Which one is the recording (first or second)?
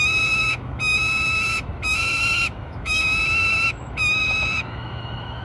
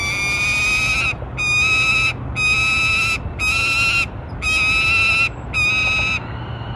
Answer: second